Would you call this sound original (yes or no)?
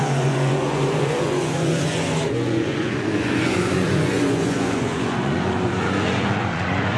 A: no